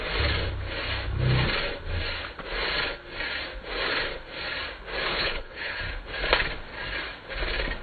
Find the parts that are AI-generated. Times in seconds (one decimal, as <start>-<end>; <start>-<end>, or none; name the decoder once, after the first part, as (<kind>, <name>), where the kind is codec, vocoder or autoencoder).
5.1-5.8 (codec, HILCodec)